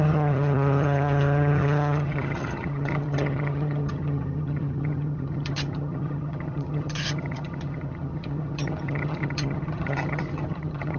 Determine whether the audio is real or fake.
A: fake